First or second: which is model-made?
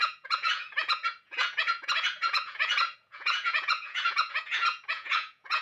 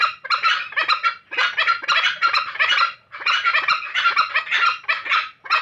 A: first